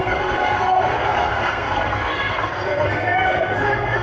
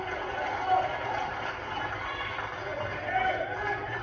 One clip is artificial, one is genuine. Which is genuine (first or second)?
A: second